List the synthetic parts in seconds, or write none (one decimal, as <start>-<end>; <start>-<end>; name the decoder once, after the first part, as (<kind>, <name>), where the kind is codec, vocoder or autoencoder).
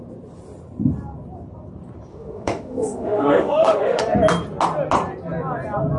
2.1-4.0 (autoencoder, DAC-VAE)